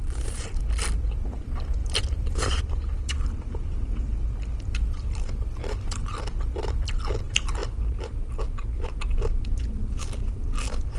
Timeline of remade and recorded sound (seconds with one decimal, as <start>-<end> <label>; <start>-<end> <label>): 0.0-1.8 recorded; 1.8-2.6 remade; 2.6-11.0 recorded